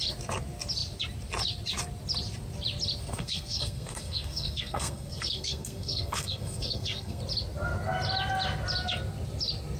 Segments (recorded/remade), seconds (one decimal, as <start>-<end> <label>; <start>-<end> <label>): 0.0-3.0 recorded; 3.0-7.2 remade; 7.2-9.8 recorded